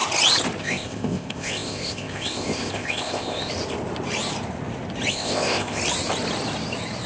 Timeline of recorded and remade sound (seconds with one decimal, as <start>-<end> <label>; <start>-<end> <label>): 0.0-0.6 recorded; 0.6-3.5 remade; 3.5-5.1 recorded; 5.1-5.8 remade; 5.8-7.1 recorded